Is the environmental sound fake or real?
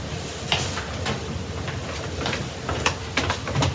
real